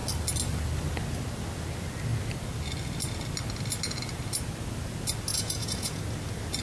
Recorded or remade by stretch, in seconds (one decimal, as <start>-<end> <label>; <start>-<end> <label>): 0.0-5.3 recorded; 5.3-6.0 remade; 6.0-6.6 recorded